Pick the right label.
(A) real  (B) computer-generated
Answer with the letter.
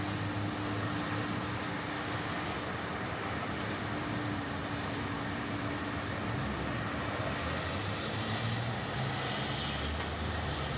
A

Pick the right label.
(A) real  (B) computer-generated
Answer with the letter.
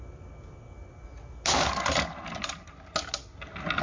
A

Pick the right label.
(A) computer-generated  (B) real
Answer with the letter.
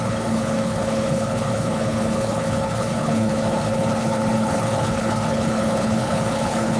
A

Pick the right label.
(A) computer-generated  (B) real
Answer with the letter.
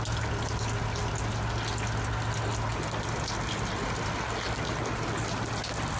B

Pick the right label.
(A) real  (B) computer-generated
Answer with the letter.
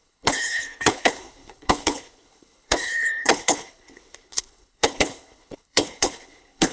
B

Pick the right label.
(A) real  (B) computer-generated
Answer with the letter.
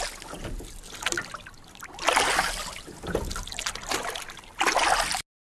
A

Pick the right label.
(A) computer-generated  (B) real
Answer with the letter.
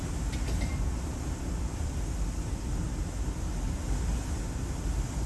B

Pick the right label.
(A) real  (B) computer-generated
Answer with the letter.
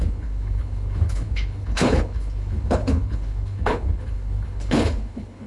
B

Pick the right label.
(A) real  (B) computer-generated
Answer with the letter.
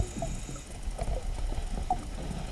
A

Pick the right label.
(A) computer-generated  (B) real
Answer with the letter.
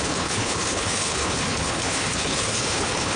A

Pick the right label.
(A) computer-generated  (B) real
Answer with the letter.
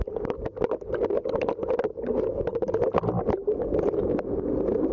B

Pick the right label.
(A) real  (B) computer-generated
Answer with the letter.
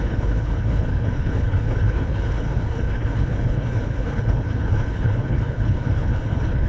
B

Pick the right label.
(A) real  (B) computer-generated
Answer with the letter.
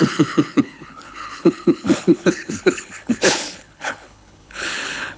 B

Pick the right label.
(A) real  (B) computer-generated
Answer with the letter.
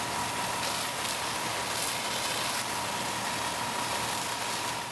A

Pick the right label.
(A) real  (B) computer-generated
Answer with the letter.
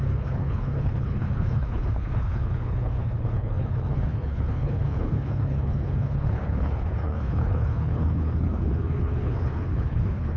B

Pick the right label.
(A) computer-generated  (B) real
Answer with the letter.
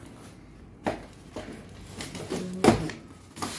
B